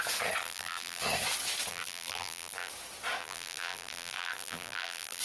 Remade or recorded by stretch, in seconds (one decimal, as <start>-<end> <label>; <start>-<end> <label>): 0.0-0.4 recorded; 0.4-1.0 remade; 1.0-1.7 recorded; 1.7-2.7 remade; 2.7-3.2 recorded; 3.2-5.2 remade